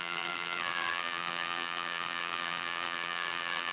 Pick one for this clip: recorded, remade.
remade